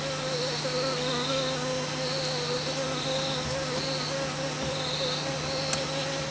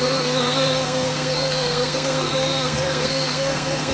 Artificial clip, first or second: second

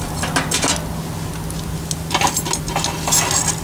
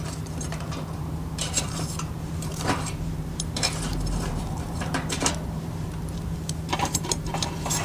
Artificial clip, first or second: second